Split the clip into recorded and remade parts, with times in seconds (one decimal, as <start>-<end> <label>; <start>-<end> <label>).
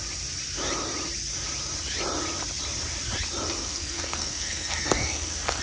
0.0-3.6 recorded; 3.6-5.6 remade